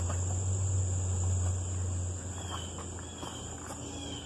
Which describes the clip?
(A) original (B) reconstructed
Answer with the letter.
A